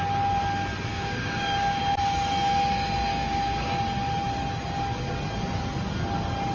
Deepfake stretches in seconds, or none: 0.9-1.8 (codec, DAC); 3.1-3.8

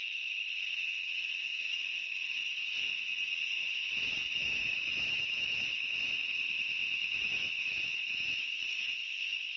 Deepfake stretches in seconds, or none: 0.0-9.6 (autoencoder, DAC-VAE)

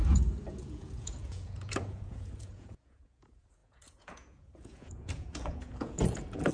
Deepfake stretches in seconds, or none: 0.0-6.5 (vocoder, Vocos)

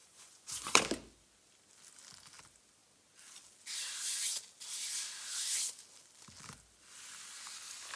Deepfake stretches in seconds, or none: 0.0-0.8 (vocoder, Vocos)

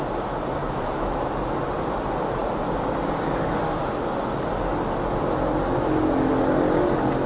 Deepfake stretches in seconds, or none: 0.6-1.2 (autoencoder, DAC-VAE)

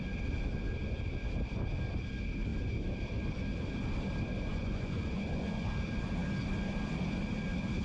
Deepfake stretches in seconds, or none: 4.5-5.7 (vocoder, Vocos)

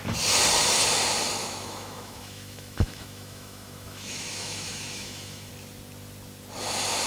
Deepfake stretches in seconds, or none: 1.4-5.5 (autoencoder, DAC-VAE)

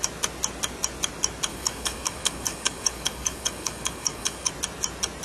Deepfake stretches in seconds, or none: 1.5-4.5 (codec, DAC)